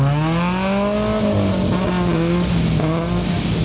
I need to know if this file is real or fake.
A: real